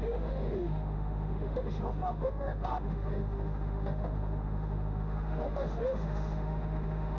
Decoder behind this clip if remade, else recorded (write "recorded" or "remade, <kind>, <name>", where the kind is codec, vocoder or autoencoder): remade, autoencoder, DAC-VAE